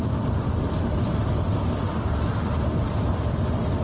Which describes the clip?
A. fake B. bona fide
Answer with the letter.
B